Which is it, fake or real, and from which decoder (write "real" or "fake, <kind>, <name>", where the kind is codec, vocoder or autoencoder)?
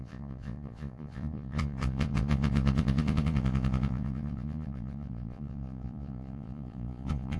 fake, vocoder, Vocos